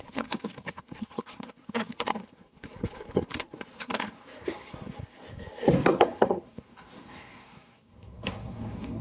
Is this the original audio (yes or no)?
no